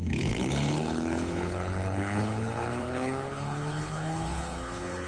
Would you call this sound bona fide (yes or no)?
no